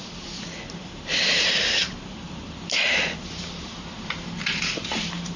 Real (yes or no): no